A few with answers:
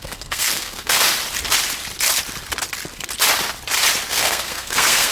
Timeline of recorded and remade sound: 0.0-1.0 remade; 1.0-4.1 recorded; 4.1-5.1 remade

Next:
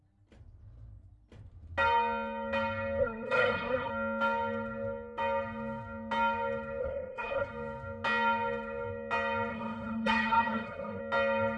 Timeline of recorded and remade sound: 0.0-3.0 recorded; 3.0-3.9 remade; 3.9-6.8 recorded; 6.8-7.5 remade; 7.5-9.5 recorded; 9.5-11.0 remade; 11.0-11.6 recorded

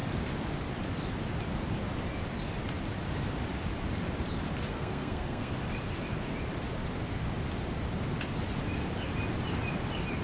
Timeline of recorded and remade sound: 0.0-4.7 recorded; 4.7-5.5 remade; 5.5-10.2 recorded

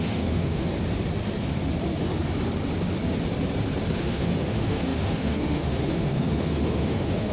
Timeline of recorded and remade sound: 0.0-0.7 remade; 0.7-4.0 recorded; 4.0-7.3 remade

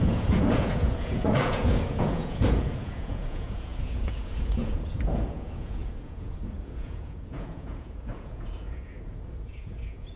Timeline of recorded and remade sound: 0.0-10.2 remade